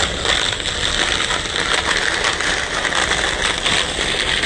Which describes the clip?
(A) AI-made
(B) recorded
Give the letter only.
B